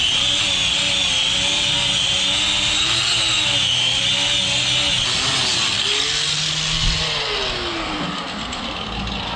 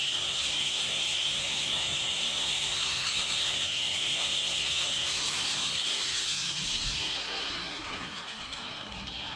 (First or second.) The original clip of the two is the first